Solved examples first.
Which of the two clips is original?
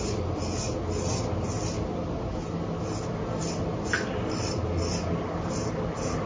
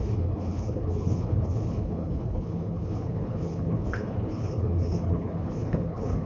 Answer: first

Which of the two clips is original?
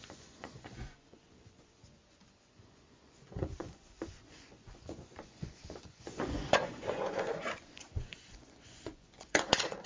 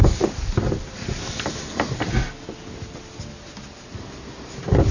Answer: second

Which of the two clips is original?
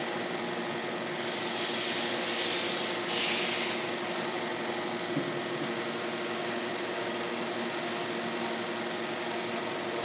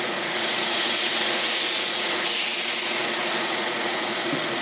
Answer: first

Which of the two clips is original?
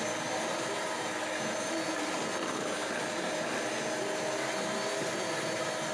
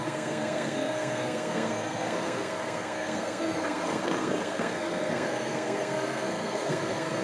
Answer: first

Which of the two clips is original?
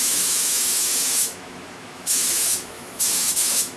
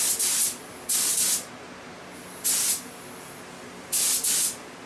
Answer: second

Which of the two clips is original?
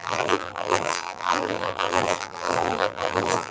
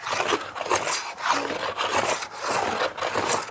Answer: second